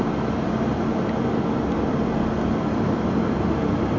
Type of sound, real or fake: real